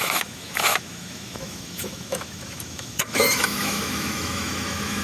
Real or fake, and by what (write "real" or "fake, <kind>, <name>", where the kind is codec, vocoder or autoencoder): fake, autoencoder, DAC-VAE